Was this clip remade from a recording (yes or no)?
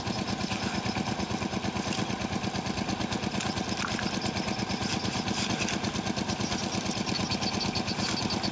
no